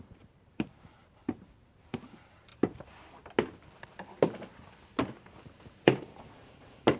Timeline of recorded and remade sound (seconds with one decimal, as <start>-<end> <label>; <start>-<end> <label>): 0.0-2.5 remade; 2.5-5.7 recorded; 5.7-7.0 remade